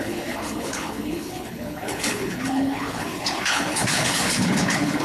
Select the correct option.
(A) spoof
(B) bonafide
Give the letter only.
A